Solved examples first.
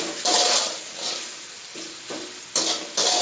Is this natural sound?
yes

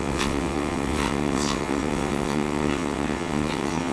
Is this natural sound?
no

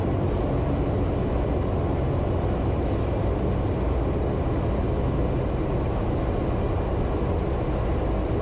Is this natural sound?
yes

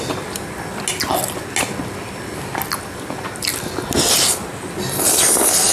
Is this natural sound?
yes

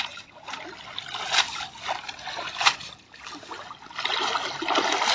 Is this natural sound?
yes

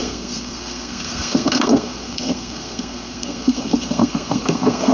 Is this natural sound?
no